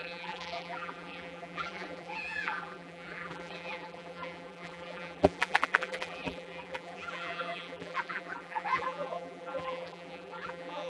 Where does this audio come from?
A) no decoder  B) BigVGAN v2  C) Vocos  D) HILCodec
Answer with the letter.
B